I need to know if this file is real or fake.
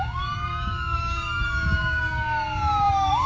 fake